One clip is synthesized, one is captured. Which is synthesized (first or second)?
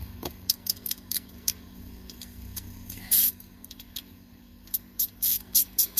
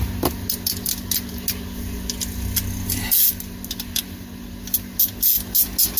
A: first